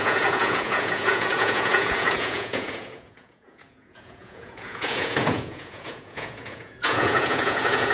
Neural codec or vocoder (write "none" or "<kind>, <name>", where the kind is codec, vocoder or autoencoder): vocoder, Vocos